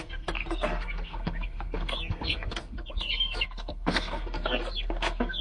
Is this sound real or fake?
fake